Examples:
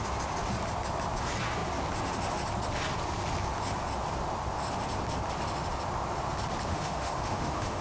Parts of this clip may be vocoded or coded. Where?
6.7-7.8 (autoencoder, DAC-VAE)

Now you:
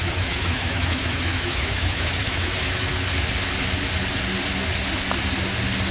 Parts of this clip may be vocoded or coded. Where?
0.0-2.9 (autoencoder, DAC-VAE)

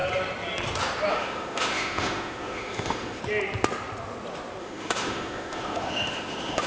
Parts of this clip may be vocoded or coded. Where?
1.1-3.2 (autoencoder, DAC-VAE); 4.6-6.7

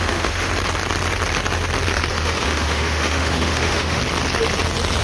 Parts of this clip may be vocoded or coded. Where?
0.0-0.5 (autoencoder, DAC-VAE); 2.1-4.0

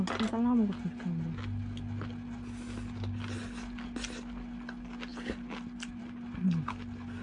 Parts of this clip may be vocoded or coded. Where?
none

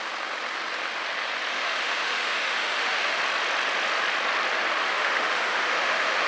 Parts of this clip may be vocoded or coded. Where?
1.5-3.2 (autoencoder, DAC-VAE); 4.8-6.3

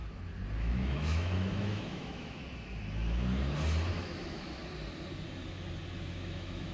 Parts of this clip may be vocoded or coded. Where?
0.6-2.4 (autoencoder, DAC-VAE); 3.9-4.6; 6.1-6.7

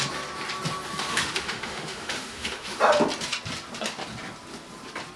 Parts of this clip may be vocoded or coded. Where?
1.1-2.8 (autoencoder, DAC-VAE)